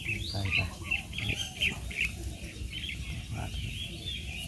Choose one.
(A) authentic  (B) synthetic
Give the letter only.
A